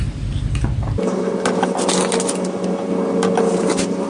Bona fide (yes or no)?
yes